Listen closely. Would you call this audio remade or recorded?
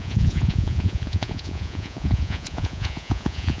remade